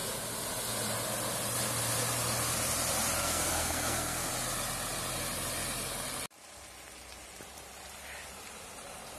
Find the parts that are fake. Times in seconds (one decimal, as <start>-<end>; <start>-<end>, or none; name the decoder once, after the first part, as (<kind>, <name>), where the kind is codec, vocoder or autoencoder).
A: 3.2-4.3 (codec, SNAC)